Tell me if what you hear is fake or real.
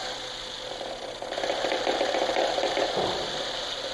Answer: real